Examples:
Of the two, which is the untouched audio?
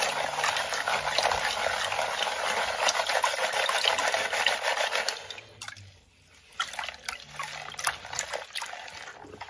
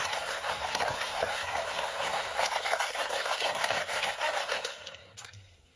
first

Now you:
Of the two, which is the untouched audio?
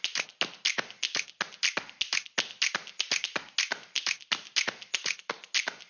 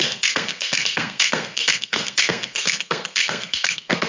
first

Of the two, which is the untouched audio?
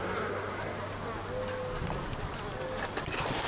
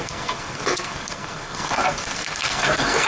first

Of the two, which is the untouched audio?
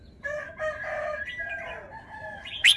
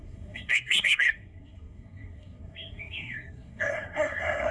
first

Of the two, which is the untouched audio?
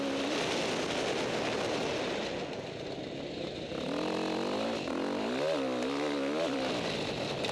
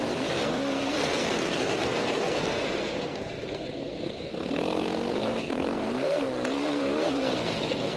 first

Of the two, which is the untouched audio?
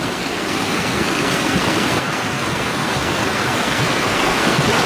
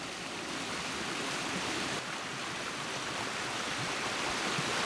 second